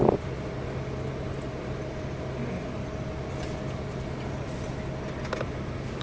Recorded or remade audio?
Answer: recorded